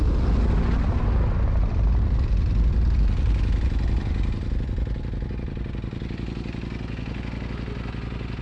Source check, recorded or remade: recorded